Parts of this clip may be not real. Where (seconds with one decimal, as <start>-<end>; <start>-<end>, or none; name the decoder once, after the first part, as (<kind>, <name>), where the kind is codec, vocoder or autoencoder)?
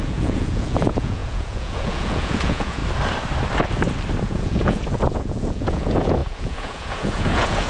0.0-2.8 (vocoder, Vocos); 4.2-7.7